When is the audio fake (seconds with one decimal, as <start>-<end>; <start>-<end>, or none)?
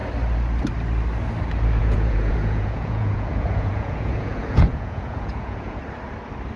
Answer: 1.8-5.8